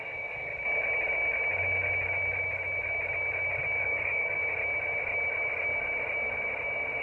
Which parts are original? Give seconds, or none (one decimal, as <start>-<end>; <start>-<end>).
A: 0.5-3.8; 4.4-7.0